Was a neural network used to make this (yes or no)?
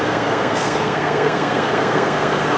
yes